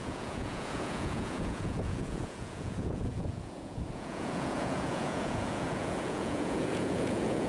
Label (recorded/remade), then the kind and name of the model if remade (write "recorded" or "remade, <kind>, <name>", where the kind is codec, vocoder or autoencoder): remade, vocoder, Vocos